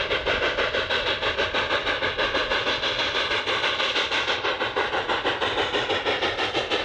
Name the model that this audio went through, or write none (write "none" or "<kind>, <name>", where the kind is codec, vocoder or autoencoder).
none